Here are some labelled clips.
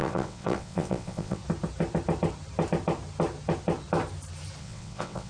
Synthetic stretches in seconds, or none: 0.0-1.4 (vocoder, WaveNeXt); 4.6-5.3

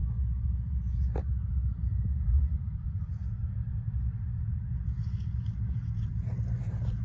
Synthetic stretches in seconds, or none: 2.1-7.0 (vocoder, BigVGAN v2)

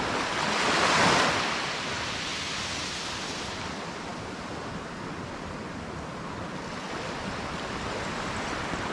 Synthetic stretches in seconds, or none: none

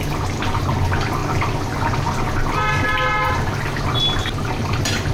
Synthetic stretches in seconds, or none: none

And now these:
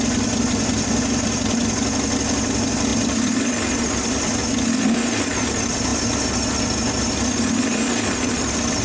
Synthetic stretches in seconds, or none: none

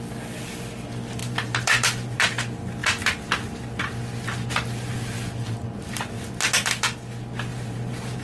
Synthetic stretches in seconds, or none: 1.2-2.4 (vocoder, BigVGAN v2); 7.5-8.2